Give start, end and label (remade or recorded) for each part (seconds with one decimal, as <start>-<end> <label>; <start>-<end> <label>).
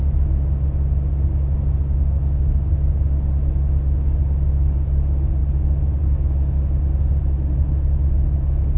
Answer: 0.0-8.8 recorded